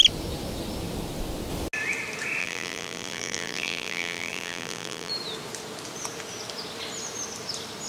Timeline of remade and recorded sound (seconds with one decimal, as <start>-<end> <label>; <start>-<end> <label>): 0.0-2.4 recorded; 2.4-5.1 remade; 5.1-7.9 recorded